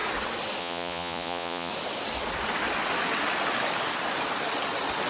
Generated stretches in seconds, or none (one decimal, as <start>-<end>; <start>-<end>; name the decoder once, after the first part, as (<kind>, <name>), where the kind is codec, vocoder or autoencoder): 0.6-1.7 (vocoder, Vocos)